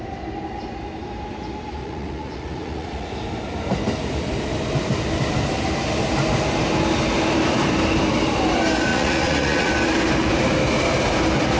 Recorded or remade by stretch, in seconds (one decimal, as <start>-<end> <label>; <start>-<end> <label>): 0.0-1.8 recorded; 1.8-3.1 remade; 3.1-8.9 recorded; 8.9-9.7 remade; 9.7-11.6 recorded

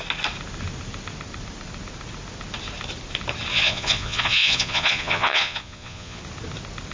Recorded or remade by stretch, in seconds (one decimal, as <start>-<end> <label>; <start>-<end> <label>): 0.0-3.5 recorded; 3.5-6.2 remade; 6.2-6.9 recorded

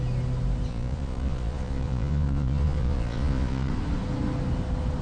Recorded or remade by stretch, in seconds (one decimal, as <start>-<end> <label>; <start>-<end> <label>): 0.0-0.7 recorded; 0.7-3.7 remade; 3.7-5.0 recorded

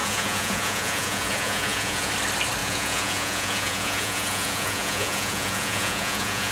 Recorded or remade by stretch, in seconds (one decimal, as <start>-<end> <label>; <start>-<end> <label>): 0.0-2.1 remade; 2.1-2.6 recorded; 2.6-6.5 remade

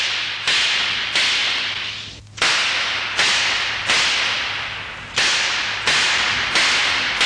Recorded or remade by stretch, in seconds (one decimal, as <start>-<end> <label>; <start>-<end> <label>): 0.0-7.3 recorded

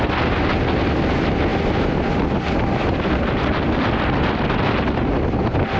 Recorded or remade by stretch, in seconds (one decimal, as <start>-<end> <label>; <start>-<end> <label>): 0.0-5.8 recorded

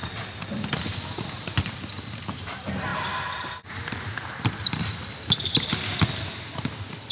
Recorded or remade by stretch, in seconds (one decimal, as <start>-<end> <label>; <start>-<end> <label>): 0.0-7.1 recorded

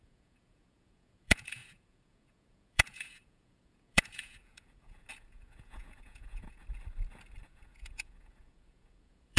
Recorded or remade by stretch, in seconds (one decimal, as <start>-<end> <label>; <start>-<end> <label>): 0.0-6.6 remade; 6.6-7.4 recorded; 7.4-9.4 remade